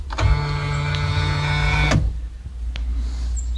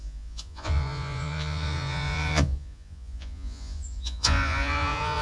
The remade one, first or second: second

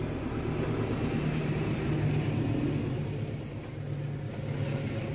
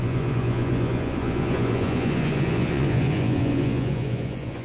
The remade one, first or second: second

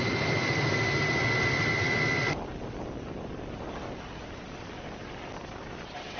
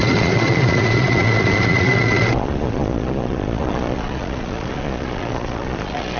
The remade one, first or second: second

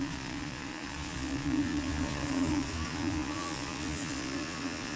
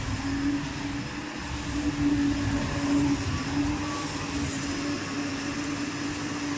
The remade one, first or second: first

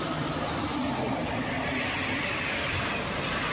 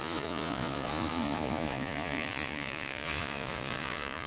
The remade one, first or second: second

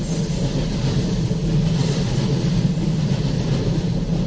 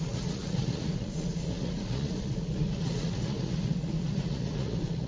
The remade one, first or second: second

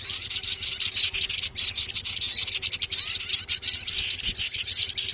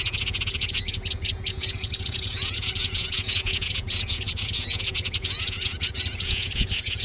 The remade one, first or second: second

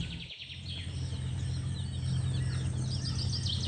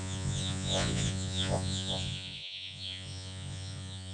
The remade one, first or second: second